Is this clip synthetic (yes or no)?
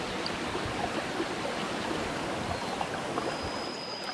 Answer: no